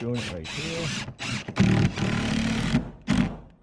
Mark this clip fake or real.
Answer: real